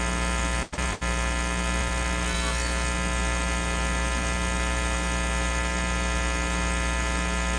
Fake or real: real